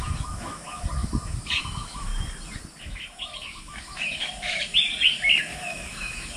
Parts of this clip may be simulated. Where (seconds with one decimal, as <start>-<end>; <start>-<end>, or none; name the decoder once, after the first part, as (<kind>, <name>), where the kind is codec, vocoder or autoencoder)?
0.0-2.1 (autoencoder, DAC-VAE); 2.8-4.7; 5.4-6.4